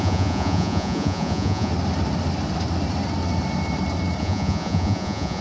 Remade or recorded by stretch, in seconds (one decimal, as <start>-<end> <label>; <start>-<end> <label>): 0.0-1.7 remade; 1.7-4.2 recorded; 4.2-5.4 remade